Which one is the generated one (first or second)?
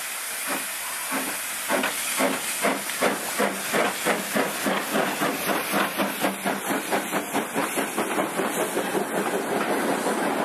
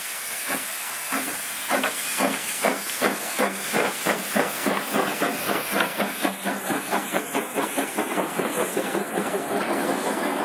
second